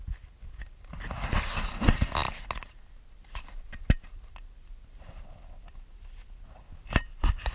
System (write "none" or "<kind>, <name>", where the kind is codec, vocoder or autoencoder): none